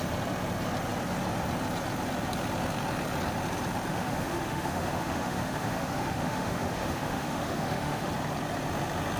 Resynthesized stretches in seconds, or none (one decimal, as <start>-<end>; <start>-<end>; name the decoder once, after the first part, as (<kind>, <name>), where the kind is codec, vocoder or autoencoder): 3.9-8.1 (autoencoder, DAC-VAE)